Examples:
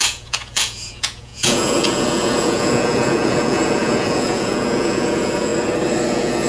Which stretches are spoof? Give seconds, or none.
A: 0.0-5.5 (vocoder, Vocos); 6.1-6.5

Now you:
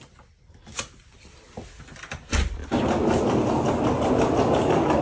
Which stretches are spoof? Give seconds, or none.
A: none

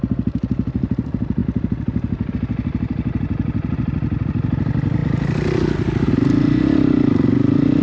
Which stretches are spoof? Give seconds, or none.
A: none

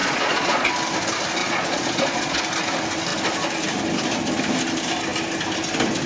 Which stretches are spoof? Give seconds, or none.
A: 0.0-0.7 (vocoder, Vocos); 1.4-2.4